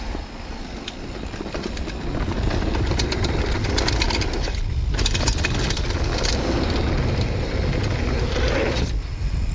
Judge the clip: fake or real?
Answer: real